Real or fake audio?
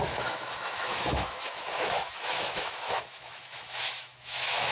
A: fake